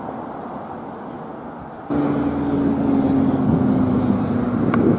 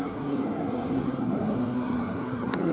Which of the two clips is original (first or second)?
first